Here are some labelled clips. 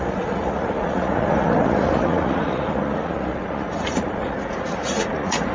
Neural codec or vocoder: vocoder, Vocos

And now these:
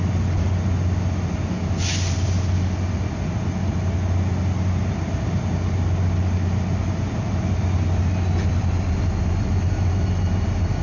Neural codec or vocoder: none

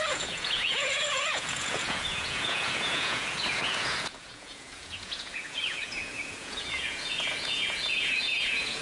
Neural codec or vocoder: vocoder, Vocos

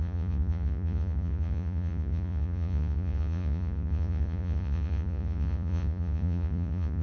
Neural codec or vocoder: vocoder, Vocos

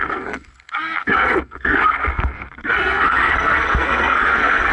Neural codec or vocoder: codec, SNAC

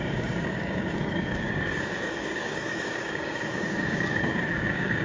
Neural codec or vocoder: codec, DAC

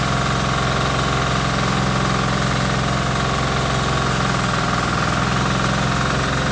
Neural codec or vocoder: none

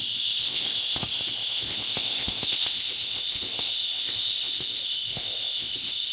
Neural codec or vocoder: codec, ZipCodec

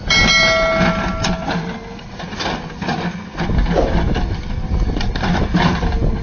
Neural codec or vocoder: none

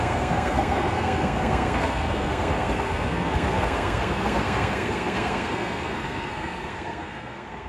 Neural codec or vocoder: codec, SNAC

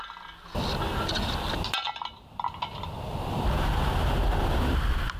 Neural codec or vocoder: none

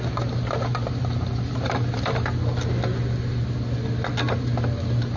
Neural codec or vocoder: none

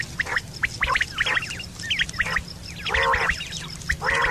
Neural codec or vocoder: none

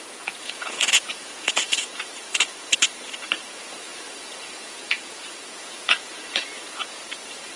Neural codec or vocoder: vocoder, Vocos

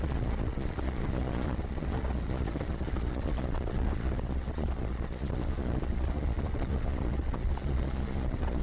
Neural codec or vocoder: vocoder, Vocos